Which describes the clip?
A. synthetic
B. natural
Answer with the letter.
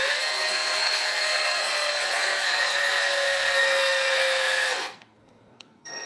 A